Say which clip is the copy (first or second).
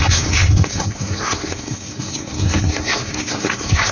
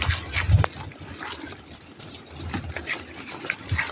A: first